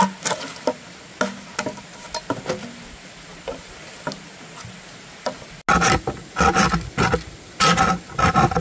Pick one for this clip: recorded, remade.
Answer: recorded